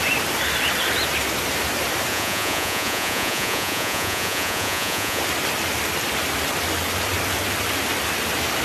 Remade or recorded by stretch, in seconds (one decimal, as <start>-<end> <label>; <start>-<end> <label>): 0.0-2.1 recorded; 2.1-5.2 remade; 5.2-8.6 recorded